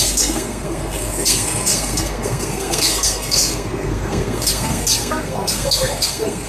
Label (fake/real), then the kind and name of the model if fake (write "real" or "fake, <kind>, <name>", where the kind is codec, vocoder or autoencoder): fake, codec, SNAC